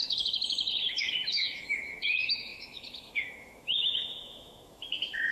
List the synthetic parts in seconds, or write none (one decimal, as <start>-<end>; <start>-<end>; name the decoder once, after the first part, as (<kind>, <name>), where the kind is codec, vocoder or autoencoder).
0.0-5.3 (autoencoder, DAC-VAE)